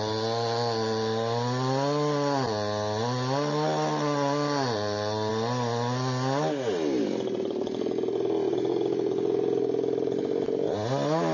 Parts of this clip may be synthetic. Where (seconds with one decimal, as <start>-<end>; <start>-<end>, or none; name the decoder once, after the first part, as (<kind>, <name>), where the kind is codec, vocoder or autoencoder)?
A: none

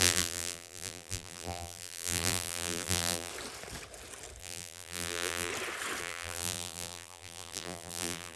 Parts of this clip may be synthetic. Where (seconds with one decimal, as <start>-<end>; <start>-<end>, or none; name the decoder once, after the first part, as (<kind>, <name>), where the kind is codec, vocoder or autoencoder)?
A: 0.0-3.3 (vocoder, BigVGAN v2); 4.4-5.5; 6.0-8.4

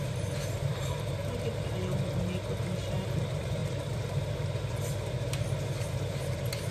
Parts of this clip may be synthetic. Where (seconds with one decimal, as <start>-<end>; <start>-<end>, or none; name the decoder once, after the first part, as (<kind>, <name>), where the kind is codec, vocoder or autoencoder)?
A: 0.0-1.2 (vocoder, BigVGAN v2); 3.2-3.6; 5.9-6.7